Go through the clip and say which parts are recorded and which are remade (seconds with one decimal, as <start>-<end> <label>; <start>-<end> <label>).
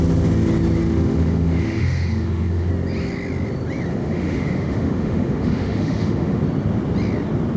0.0-0.8 recorded; 0.8-2.7 remade; 2.7-3.9 recorded; 3.9-6.4 remade; 6.4-7.6 recorded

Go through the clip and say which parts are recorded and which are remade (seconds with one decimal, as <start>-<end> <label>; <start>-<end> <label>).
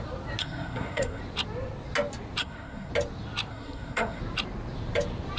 0.0-0.4 recorded; 0.4-1.2 remade; 1.2-2.4 recorded; 2.4-2.9 remade; 2.9-3.5 recorded; 3.5-4.2 remade; 4.2-5.4 recorded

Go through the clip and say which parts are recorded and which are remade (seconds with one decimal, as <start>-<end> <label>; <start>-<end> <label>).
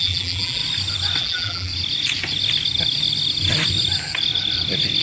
0.0-0.6 remade; 0.6-1.2 recorded; 1.2-1.7 remade; 1.7-5.0 recorded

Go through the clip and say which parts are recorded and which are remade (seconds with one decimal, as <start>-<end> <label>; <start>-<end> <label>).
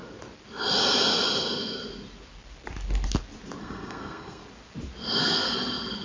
0.0-3.6 recorded; 3.6-4.4 remade; 4.4-5.2 recorded; 5.2-6.0 remade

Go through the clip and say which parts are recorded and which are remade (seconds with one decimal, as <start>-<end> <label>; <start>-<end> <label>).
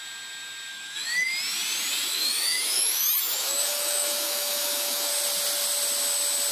0.0-0.7 recorded; 0.7-1.3 remade; 1.3-2.1 recorded; 2.1-5.1 remade; 5.1-6.5 recorded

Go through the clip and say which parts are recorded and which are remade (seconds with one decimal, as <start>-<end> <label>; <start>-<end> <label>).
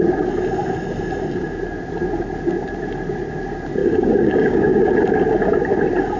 0.0-3.8 recorded; 3.8-4.9 remade; 4.9-6.2 recorded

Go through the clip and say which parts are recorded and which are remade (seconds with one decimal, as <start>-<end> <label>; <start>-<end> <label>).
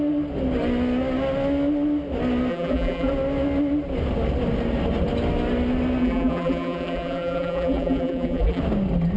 0.0-2.5 recorded; 2.5-3.1 remade; 3.1-6.0 recorded; 6.0-8.6 remade; 8.6-9.2 recorded